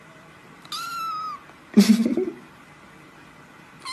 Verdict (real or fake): real